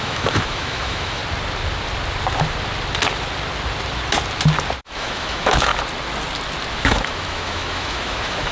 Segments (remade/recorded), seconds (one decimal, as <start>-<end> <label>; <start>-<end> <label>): 0.0-1.2 remade; 1.2-4.8 recorded; 4.8-5.7 remade; 5.7-6.7 recorded; 6.7-8.5 remade

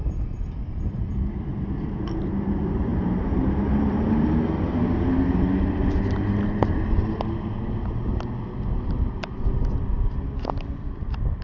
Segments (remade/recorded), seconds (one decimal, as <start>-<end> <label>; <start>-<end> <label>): 0.0-11.4 recorded

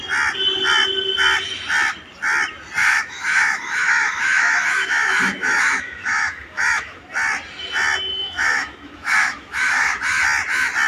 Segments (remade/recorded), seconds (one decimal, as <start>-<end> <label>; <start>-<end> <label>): 0.0-2.8 recorded; 2.8-7.0 remade; 7.0-8.2 recorded; 8.2-10.0 remade; 10.0-10.9 recorded

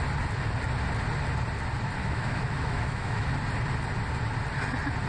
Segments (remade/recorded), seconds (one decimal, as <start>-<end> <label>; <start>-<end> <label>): 0.0-2.0 recorded; 2.0-3.3 remade; 3.3-5.1 recorded

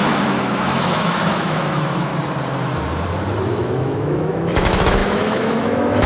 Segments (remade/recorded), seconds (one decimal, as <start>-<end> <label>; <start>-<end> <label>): 0.0-2.1 remade; 2.1-3.5 recorded; 3.5-6.1 remade

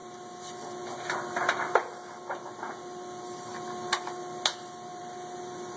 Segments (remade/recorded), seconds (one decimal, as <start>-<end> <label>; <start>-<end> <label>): 0.0-5.8 recorded

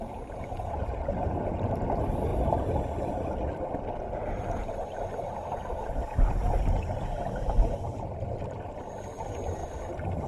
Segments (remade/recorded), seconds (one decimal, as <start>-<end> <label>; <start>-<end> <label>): 0.0-2.3 remade; 2.3-4.3 recorded; 4.3-6.0 remade; 6.0-9.2 recorded; 9.2-9.6 remade; 9.6-10.3 recorded

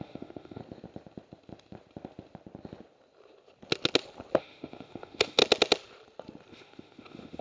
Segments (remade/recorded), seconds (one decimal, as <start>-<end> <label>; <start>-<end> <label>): 0.0-0.6 remade; 0.6-4.4 recorded; 4.4-5.4 remade; 5.4-6.5 recorded; 6.5-7.4 remade